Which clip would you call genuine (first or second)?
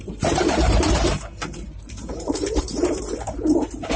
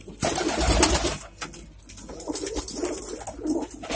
second